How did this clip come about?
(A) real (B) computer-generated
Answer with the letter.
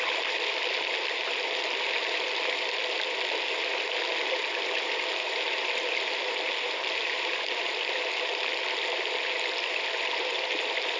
A